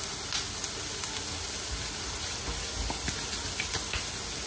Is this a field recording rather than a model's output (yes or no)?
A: yes